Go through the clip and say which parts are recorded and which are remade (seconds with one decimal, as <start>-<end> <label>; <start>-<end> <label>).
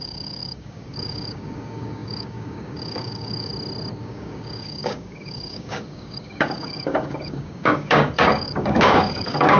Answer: 0.0-3.5 remade; 3.5-4.0 recorded; 4.0-9.6 remade